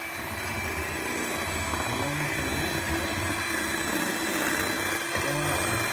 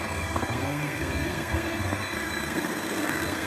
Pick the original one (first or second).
first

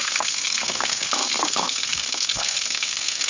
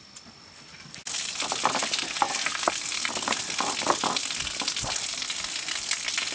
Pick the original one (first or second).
second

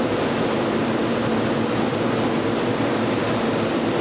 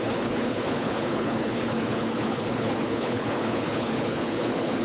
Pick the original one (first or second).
first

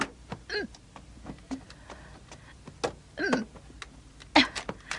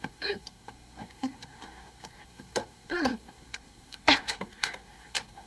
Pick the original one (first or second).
first